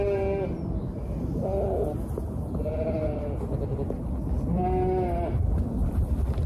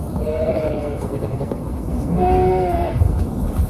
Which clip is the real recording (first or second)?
first